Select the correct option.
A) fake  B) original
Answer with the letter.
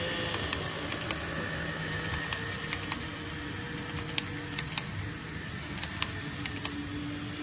B